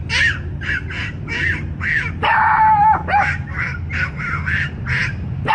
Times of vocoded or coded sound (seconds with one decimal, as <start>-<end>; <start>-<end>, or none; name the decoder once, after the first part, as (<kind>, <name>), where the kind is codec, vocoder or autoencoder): none